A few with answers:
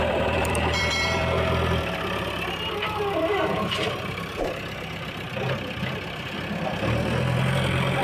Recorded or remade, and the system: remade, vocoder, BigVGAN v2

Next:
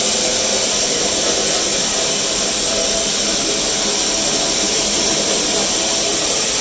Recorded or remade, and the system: recorded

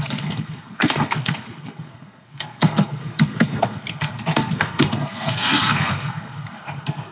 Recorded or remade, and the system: remade, codec, SNAC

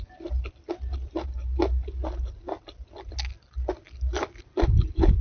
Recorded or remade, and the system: recorded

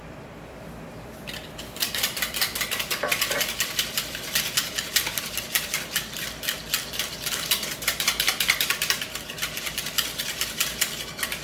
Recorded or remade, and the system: remade, vocoder, BigVGAN v2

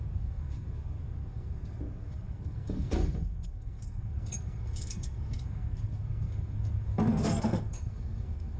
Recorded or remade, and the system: remade, codec, SNAC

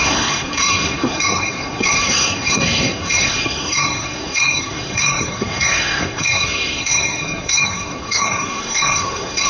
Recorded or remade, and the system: remade, codec, SNAC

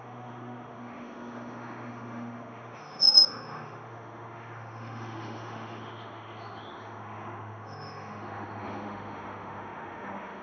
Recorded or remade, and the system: remade, autoencoder, DAC-VAE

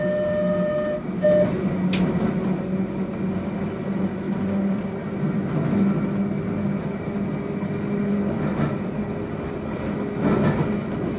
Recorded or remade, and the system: recorded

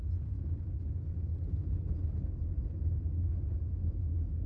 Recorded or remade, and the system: recorded